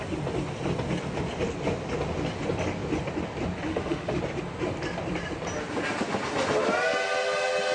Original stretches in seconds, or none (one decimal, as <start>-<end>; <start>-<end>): 0.0-3.7; 4.2-7.7